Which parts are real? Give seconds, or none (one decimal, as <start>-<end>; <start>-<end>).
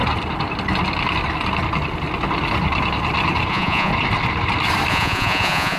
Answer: 0.0-3.5; 3.9-4.9